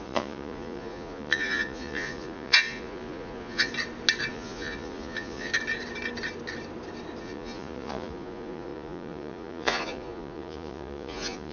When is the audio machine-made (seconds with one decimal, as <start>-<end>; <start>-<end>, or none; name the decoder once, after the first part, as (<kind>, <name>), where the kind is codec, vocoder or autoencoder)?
0.0-3.7 (vocoder, Vocos); 4.3-5.5; 7.2-11.5

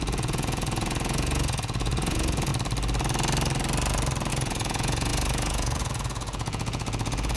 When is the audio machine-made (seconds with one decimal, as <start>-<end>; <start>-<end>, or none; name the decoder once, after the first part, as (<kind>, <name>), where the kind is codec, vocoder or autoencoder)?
0.0-2.5 (vocoder, Vocos); 4.3-7.4

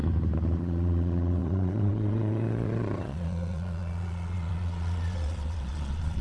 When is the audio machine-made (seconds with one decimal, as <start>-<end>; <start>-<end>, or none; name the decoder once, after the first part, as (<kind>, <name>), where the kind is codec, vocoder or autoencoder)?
0.6-6.2 (vocoder, Vocos)